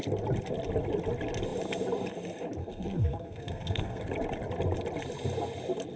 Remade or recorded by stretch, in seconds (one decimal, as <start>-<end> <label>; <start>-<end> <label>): 0.0-2.6 recorded; 2.6-4.0 remade; 4.0-6.0 recorded